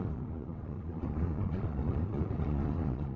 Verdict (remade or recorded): remade